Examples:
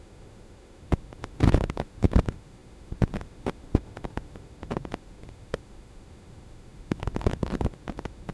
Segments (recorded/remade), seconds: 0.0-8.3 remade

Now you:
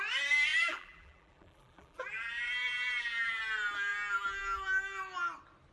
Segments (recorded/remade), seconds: 0.0-0.5 recorded; 0.5-3.4 remade; 3.4-5.7 recorded